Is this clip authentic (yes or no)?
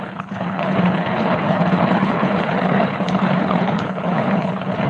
no